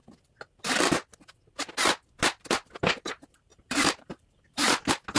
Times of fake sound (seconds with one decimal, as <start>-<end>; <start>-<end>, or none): 3.5-4.8